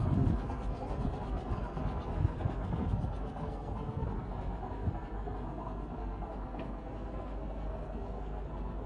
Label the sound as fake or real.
fake